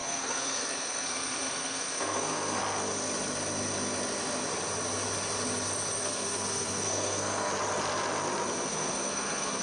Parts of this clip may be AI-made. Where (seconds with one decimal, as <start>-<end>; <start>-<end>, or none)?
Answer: 0.0-2.6; 6.0-7.5; 8.7-9.6